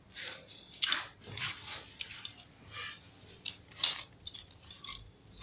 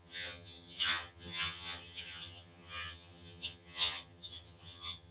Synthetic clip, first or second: second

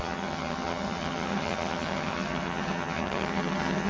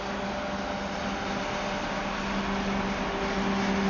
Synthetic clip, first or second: first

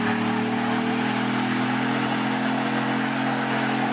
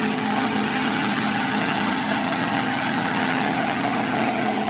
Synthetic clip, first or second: second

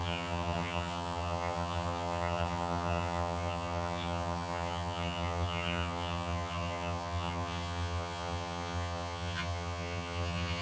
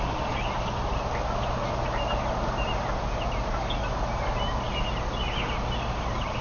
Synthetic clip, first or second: first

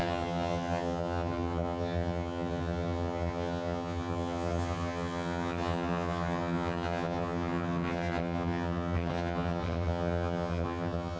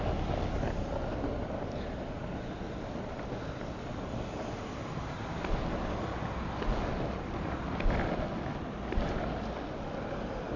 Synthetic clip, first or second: first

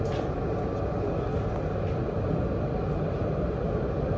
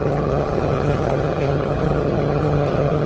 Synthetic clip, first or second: second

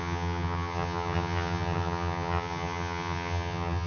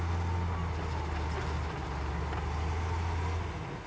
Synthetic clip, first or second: first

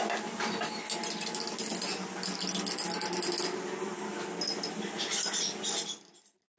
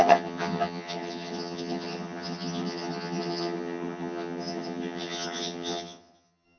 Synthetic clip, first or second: second